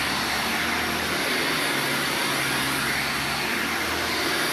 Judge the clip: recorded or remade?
recorded